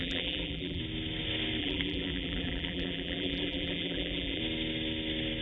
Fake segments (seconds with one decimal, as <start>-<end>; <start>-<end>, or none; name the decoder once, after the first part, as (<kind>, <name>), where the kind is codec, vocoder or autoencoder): 0.0-0.8 (vocoder, BigVGAN v2); 1.6-4.4